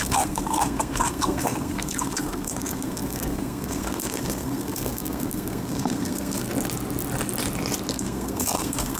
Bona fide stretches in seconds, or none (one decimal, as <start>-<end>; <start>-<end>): 6.5-7.9

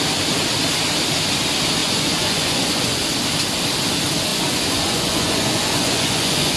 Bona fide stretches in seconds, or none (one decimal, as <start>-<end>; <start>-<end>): 0.0-1.8; 3.0-4.3

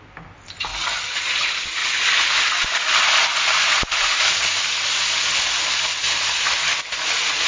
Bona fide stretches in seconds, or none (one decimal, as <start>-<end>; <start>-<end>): 0.0-7.5

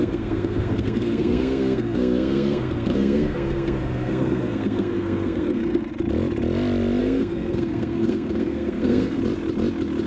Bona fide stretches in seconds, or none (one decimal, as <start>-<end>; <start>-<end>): 5.9-7.0; 9.2-10.1

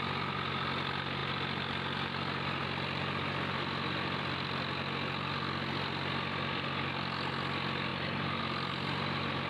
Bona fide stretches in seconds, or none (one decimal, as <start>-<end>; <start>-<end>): 0.0-9.5

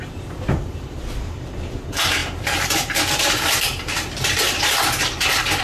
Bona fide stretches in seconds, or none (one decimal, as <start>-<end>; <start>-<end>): none